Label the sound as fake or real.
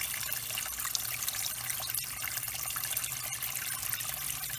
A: real